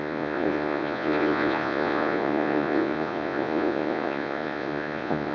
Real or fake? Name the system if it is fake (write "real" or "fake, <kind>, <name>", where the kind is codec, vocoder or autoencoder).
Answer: fake, vocoder, Vocos